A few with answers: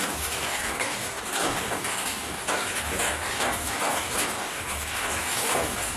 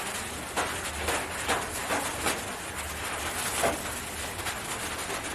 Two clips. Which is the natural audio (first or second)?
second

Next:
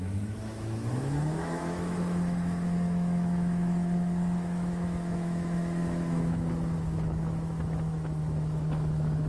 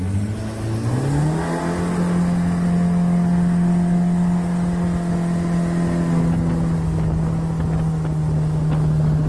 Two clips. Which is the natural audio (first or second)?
second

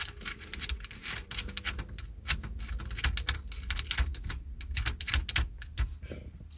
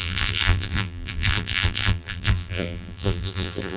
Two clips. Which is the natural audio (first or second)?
first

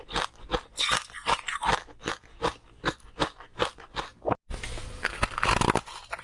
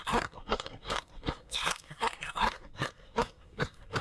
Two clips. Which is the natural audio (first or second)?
first